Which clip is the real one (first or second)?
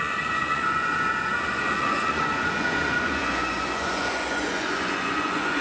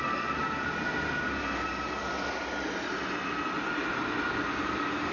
second